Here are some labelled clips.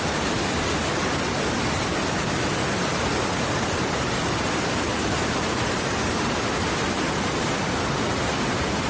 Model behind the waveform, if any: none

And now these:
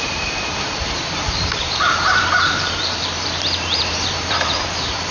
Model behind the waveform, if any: vocoder, BigVGAN v2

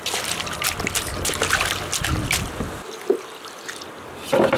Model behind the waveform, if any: none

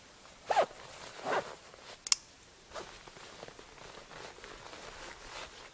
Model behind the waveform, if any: none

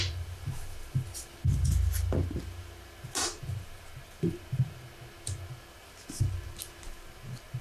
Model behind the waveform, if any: none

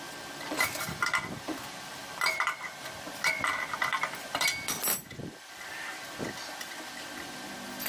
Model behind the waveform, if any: vocoder, BigVGAN v2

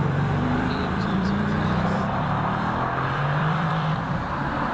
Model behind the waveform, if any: vocoder, BigVGAN v2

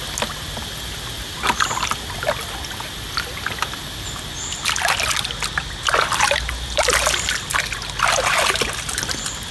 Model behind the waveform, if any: none